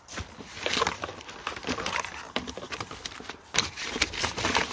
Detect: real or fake fake